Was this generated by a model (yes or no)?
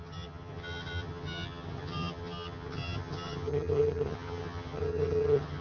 yes